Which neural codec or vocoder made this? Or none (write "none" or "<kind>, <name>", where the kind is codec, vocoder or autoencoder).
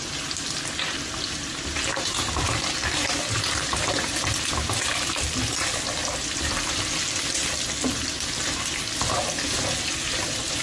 none